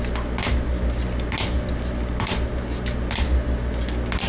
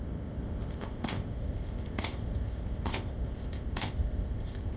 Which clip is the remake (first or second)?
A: second